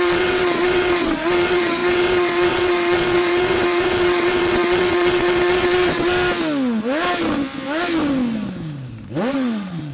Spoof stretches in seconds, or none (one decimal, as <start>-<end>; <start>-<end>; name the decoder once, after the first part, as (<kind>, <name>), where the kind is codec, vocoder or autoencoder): 0.0-6.1 (vocoder, WaveNeXt); 9.3-9.9